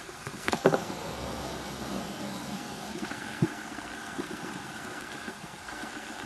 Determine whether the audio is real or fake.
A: fake